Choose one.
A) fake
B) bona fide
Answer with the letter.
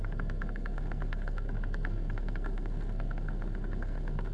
A